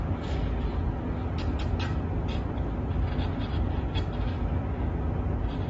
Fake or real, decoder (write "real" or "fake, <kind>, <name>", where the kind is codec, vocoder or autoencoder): real